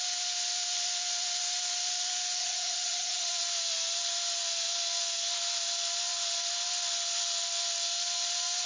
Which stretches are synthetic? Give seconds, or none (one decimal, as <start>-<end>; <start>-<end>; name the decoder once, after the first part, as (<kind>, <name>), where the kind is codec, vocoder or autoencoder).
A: 2.4-3.3 (vocoder, HiFi-GAN)